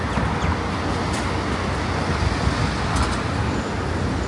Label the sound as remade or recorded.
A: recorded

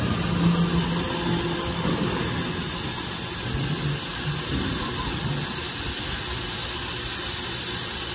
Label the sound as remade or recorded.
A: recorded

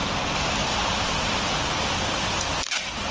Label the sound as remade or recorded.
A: recorded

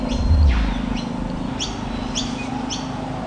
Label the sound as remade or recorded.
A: recorded